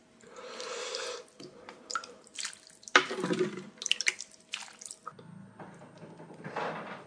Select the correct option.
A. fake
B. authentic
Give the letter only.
B